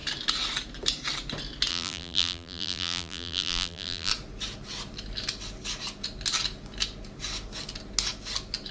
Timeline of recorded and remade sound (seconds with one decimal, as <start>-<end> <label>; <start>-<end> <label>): 0.0-1.7 recorded; 1.7-4.1 remade; 4.1-8.7 recorded